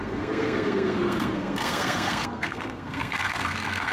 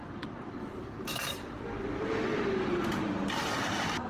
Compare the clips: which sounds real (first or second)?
second